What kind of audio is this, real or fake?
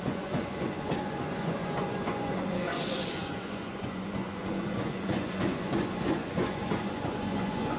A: fake